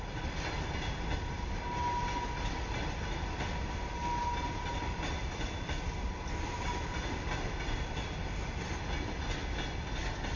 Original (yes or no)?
yes